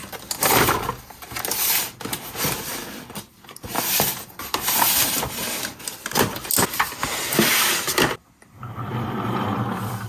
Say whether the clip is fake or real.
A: real